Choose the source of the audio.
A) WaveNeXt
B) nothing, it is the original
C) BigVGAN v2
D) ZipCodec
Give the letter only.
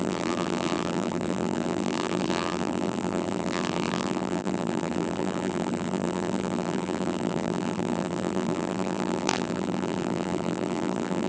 C